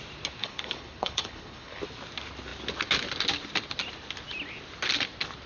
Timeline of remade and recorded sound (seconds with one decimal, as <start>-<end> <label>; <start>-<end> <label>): 0.0-0.4 recorded; 0.4-1.8 remade; 1.8-5.5 recorded